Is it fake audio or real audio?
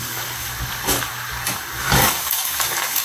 fake